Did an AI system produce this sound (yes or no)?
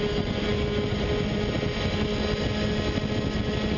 no